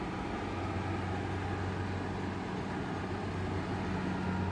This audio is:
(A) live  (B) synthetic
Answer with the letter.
A